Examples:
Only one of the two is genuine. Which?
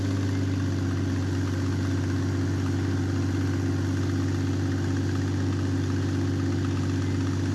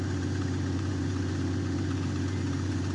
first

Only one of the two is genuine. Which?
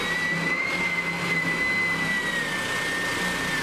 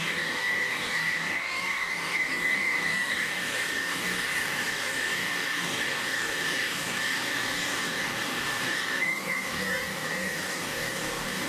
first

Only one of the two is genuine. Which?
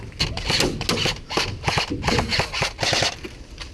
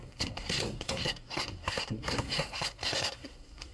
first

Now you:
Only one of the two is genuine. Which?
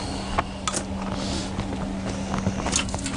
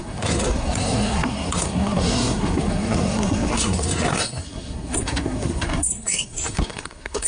first